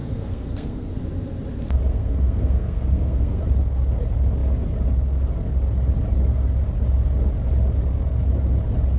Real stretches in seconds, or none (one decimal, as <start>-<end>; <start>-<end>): 1.0-1.9; 3.4-9.0